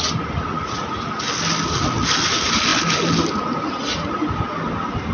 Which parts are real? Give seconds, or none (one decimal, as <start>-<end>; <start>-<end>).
0.0-0.5; 1.1-5.1